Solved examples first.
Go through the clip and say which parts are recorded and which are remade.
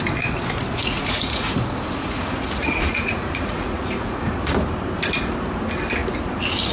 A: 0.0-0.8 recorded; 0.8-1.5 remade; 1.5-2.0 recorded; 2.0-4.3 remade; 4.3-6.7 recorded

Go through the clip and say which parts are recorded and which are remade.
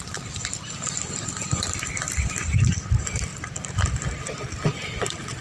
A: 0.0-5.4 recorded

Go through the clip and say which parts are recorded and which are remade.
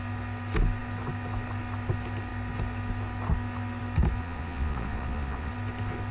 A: 0.0-4.2 recorded; 4.2-5.5 remade; 5.5-6.1 recorded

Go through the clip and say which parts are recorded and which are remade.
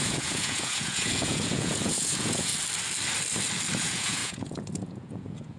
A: 0.0-2.5 remade; 2.5-3.8 recorded; 3.8-5.6 remade